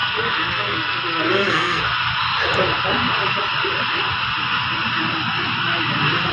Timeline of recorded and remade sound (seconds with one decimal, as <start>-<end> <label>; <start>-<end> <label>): 0.0-1.8 remade; 1.8-6.3 recorded